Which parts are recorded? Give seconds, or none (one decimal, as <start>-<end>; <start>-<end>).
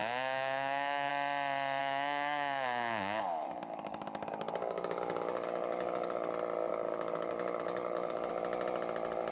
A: 1.1-1.8; 6.3-6.7; 8.3-9.3